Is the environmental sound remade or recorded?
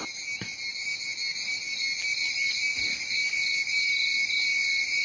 recorded